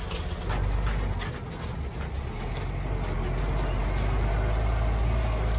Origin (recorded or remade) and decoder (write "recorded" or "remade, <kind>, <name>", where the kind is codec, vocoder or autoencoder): recorded